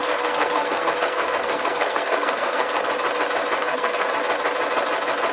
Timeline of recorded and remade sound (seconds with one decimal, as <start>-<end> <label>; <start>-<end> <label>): 0.0-2.9 remade; 2.9-3.6 recorded; 3.6-4.1 remade; 4.1-5.3 recorded